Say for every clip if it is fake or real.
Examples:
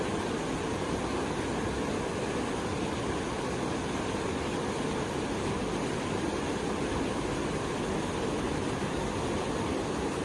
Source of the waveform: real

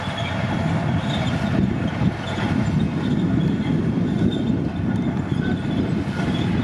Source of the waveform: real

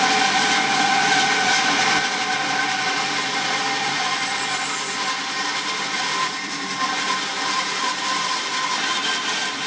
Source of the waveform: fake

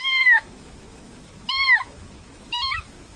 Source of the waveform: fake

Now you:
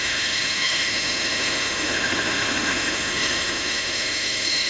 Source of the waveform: fake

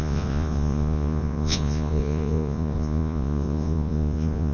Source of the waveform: fake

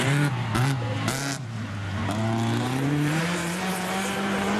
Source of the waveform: fake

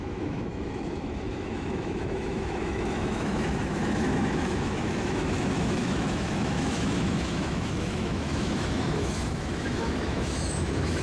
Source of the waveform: fake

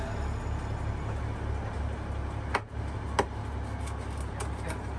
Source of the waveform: real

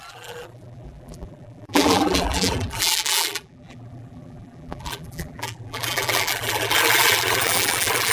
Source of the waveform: fake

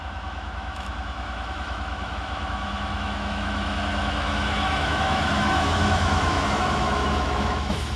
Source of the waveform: fake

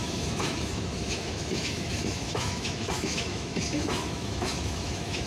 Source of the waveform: fake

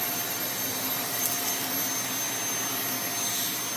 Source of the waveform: real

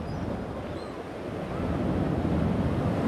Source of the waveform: real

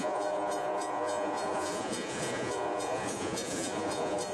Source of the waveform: fake